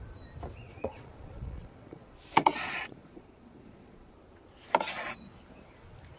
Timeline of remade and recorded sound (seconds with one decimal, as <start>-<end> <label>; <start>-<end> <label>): 0.0-0.6 recorded; 0.6-4.1 remade; 4.1-6.2 recorded